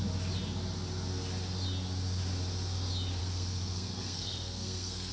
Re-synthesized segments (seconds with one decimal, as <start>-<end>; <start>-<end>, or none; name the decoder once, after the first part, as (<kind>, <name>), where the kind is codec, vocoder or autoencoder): 3.2-5.1 (codec, SNAC)